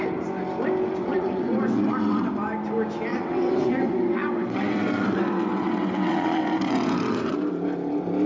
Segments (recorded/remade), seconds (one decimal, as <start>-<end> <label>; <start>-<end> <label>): 0.0-1.0 recorded; 1.0-2.3 remade; 2.3-3.1 recorded; 3.1-7.3 remade; 7.3-8.3 recorded